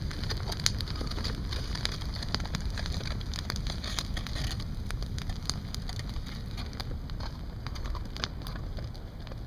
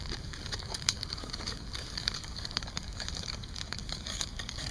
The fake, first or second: second